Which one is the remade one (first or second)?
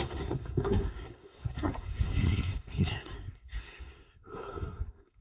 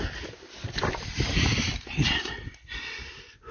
first